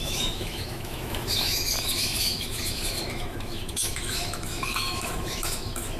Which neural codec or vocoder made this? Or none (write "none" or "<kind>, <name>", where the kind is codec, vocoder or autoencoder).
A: autoencoder, DAC-VAE